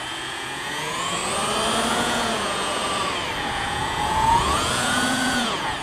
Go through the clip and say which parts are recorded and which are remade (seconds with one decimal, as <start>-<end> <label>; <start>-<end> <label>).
0.0-1.2 remade; 1.2-1.9 recorded; 1.9-2.8 remade; 2.8-3.4 recorded; 3.4-5.8 remade